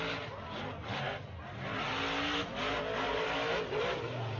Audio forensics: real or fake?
real